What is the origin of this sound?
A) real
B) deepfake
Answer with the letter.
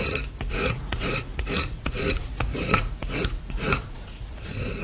B